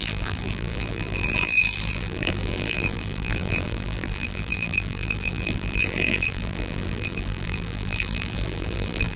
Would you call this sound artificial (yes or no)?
yes